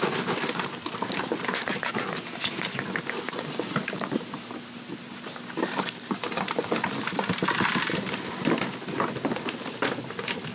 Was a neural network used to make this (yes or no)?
no